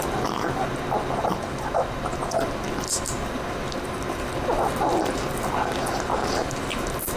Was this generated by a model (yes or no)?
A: no